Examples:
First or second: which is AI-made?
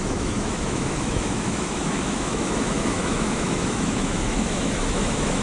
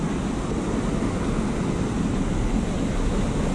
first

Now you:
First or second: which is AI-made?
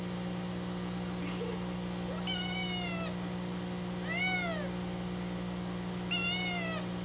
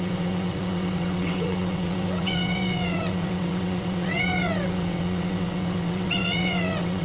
second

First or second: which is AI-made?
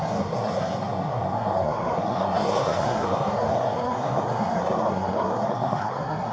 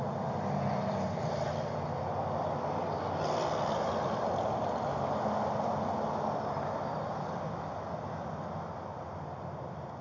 first